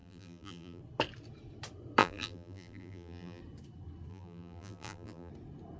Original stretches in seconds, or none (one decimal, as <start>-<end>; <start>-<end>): 0.8-2.0; 3.4-4.1; 5.3-5.8

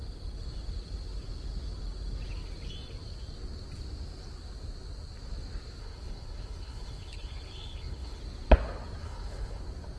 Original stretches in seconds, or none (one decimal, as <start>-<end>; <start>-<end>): 0.0-5.8; 8.2-9.0; 9.6-10.0

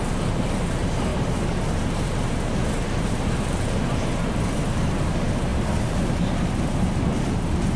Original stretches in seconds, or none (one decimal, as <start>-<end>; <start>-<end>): none

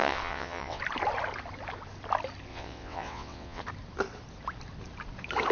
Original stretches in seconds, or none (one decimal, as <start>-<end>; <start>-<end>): 0.8-2.5; 3.6-5.5

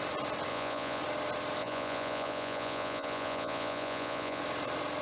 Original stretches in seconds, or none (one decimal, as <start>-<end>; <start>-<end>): 0.0-0.5; 1.0-1.6; 4.4-5.0

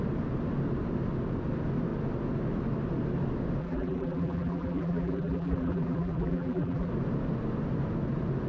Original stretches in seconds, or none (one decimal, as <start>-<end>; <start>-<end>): 0.0-3.6; 6.9-8.5

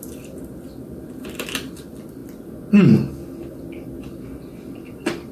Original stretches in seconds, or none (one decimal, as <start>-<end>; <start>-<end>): 2.2-4.6

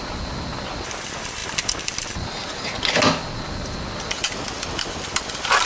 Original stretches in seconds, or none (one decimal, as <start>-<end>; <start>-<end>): 0.0-5.7